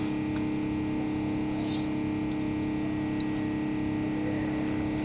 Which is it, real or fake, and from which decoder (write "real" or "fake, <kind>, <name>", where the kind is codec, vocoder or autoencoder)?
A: real